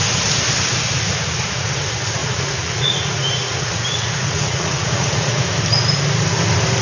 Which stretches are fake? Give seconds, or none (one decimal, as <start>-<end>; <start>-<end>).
2.2-5.4